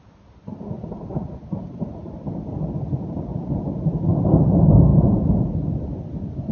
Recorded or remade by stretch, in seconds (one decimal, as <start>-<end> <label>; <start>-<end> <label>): 0.0-4.9 recorded; 4.9-5.7 remade; 5.7-6.5 recorded